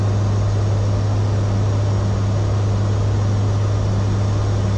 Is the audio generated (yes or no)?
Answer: no